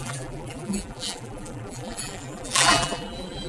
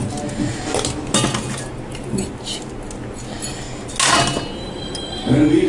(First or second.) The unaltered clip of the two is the second